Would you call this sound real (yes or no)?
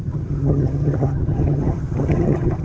no